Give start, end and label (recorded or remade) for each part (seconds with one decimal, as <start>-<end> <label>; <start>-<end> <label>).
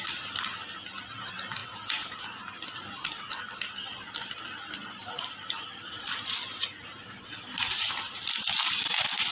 0.0-1.6 remade; 1.6-2.2 recorded; 2.2-9.3 remade